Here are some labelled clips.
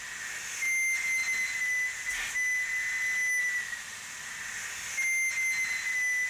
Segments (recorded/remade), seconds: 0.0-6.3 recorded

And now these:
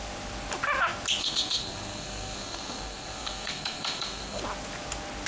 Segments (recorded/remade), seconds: 0.0-1.2 recorded; 1.2-4.4 remade; 4.4-5.3 recorded

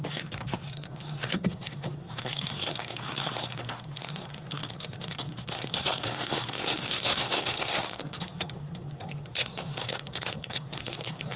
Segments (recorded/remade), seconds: 0.0-11.4 remade

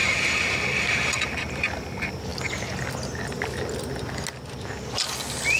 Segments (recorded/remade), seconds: 0.0-5.6 recorded

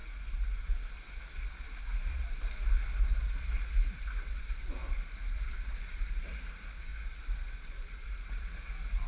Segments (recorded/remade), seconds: 0.0-4.8 recorded; 4.8-6.4 remade; 6.4-6.9 recorded; 6.9-8.3 remade; 8.3-9.1 recorded

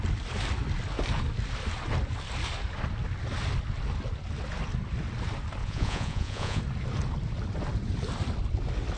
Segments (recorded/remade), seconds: 0.0-5.6 recorded; 5.6-6.6 remade; 6.6-9.0 recorded

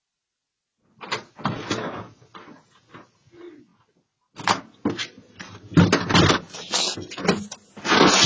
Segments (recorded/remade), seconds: 0.0-8.3 recorded